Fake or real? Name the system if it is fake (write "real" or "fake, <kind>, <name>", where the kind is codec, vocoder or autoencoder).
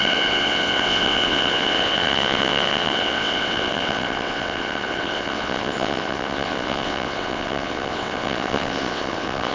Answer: fake, vocoder, WaveNeXt